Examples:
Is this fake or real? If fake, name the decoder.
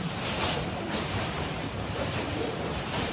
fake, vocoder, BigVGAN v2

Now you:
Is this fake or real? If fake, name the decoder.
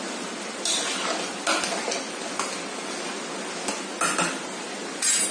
real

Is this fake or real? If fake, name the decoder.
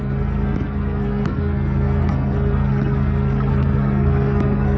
fake, codec, SNAC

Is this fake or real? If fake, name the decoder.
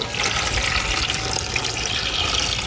real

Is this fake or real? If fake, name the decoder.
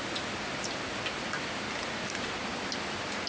real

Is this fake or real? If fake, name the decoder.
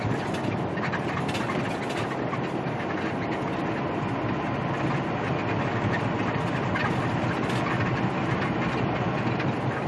real